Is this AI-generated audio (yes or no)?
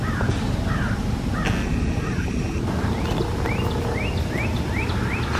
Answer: no